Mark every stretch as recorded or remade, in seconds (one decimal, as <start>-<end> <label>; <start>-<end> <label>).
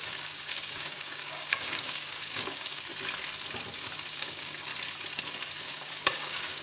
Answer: 0.0-2.9 remade; 2.9-4.1 recorded; 4.1-4.7 remade; 4.7-5.6 recorded; 5.6-6.6 remade